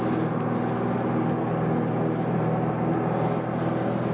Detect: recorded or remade recorded